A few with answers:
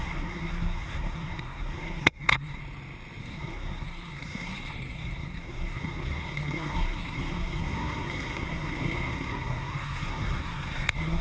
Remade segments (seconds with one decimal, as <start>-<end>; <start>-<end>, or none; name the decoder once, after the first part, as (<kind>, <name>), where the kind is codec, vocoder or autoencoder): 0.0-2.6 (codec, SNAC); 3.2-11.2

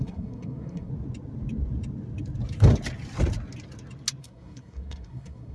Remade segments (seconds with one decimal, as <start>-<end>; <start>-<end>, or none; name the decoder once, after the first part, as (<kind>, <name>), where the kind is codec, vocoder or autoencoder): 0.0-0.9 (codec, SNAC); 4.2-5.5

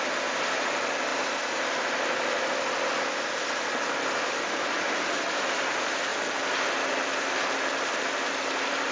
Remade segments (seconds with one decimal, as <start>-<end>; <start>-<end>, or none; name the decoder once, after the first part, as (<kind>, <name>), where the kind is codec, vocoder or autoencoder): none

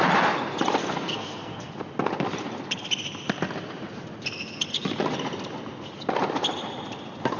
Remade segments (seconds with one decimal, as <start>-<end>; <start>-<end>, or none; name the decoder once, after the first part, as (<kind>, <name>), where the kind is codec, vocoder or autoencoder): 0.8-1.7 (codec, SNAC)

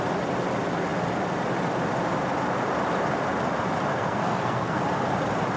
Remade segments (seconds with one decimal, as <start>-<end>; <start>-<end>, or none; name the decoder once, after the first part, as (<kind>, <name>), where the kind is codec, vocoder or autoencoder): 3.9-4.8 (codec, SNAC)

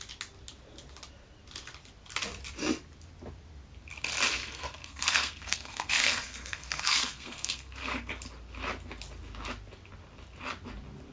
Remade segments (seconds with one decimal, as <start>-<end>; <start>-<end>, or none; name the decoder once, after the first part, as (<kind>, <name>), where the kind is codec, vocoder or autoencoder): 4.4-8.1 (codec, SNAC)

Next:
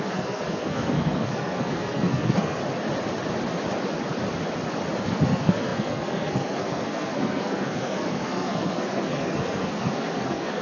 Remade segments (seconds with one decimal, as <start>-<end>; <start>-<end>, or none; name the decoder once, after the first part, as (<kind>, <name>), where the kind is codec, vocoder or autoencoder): 0.0-2.6 (codec, SNAC); 5.0-10.6